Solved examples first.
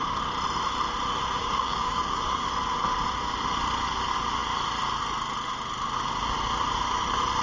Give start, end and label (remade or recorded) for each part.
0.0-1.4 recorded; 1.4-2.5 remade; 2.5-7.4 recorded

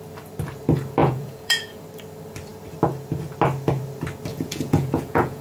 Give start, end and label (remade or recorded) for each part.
0.0-1.0 recorded; 1.0-1.8 remade; 1.8-4.3 recorded; 4.3-5.4 remade

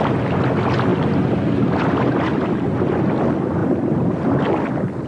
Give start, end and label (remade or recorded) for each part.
0.0-5.1 recorded

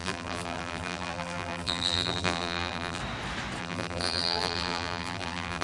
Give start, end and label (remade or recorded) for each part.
0.0-3.0 remade; 3.0-3.6 recorded; 3.6-5.6 remade

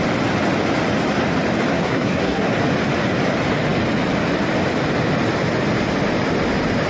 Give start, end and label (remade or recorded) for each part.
0.0-1.7 recorded; 1.7-2.5 remade; 2.5-6.9 recorded